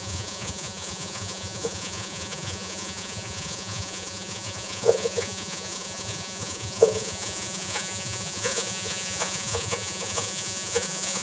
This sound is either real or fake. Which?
fake